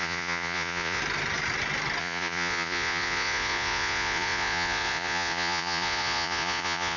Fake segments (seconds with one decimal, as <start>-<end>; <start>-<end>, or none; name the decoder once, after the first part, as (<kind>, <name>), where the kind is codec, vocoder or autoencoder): 0.0-1.0 (vocoder, Vocos); 2.0-7.0